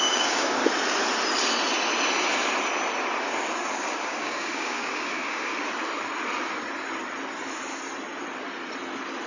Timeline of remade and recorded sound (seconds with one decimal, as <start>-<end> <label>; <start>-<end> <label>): 0.0-0.6 remade; 0.6-3.7 recorded; 3.7-5.5 remade; 5.5-9.3 recorded